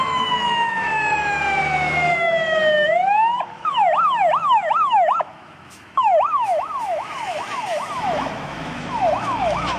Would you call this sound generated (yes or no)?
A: yes